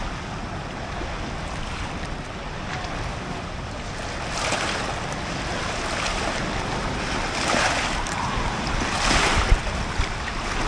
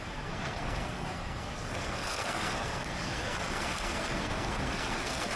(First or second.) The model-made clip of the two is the second